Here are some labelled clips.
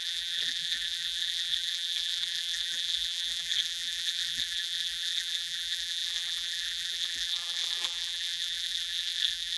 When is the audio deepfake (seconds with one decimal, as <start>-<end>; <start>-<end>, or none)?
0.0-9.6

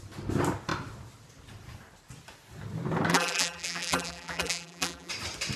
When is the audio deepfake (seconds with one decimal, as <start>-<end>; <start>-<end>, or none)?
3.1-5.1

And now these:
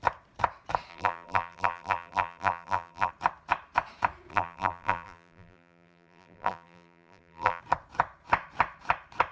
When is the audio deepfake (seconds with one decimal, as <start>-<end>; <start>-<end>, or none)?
0.9-3.1; 4.3-7.6

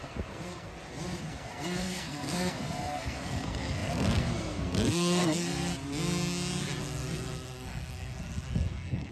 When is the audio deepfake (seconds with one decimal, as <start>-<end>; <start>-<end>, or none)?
0.0-0.7; 1.2-5.7; 6.8-9.1

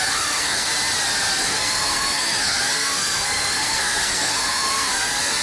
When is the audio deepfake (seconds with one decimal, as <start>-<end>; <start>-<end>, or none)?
0.0-0.7; 1.3-5.4

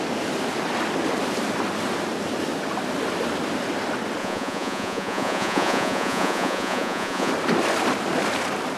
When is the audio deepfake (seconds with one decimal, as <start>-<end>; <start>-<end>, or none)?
4.2-7.3

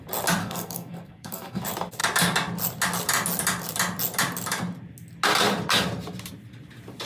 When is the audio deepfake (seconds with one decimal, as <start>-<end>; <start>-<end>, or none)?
0.4-1.6